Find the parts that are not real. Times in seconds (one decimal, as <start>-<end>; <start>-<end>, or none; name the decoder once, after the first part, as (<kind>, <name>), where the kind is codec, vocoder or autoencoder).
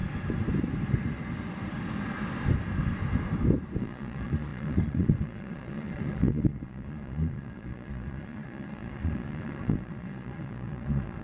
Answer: 3.8-11.2 (vocoder, Vocos)